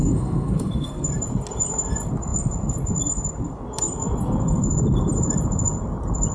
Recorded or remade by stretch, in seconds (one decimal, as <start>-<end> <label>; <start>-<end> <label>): 0.0-1.1 remade; 1.1-6.3 recorded